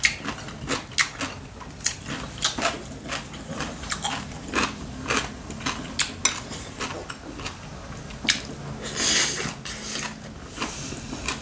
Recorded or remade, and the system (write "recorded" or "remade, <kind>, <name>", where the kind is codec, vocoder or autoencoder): recorded